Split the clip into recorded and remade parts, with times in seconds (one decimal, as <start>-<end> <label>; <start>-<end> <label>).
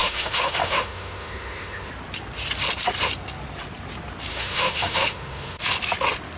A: 0.0-1.9 remade; 1.9-4.3 recorded; 4.3-5.6 remade; 5.6-6.4 recorded